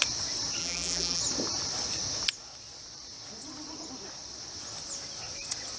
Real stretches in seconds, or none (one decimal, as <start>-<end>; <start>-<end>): 0.0-0.6; 1.2-5.8